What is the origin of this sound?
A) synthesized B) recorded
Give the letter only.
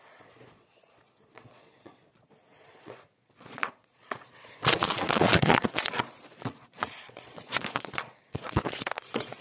A